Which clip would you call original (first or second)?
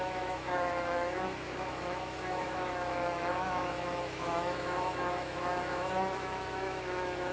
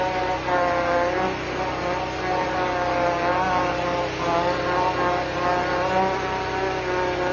second